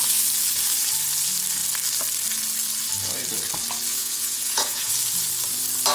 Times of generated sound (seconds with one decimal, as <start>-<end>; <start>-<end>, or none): 3.9-4.9